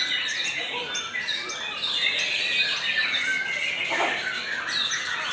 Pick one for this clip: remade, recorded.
recorded